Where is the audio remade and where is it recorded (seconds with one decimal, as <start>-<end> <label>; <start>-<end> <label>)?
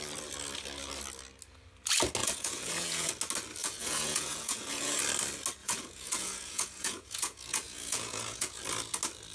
0.0-2.2 recorded; 2.2-3.1 remade; 3.1-3.6 recorded; 3.6-5.0 remade; 5.0-5.6 recorded; 5.6-8.6 remade; 8.6-9.3 recorded